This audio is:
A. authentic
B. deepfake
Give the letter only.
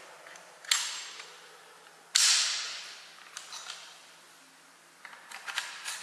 A